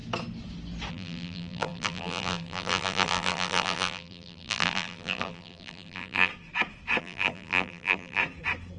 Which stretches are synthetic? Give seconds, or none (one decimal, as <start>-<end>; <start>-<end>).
0.9-6.3; 7.0-8.2